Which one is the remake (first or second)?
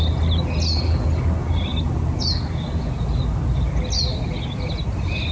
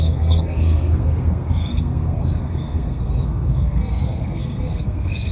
second